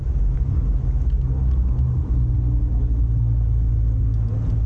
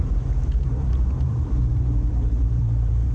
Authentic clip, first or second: first